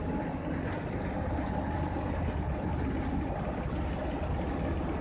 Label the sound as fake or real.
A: real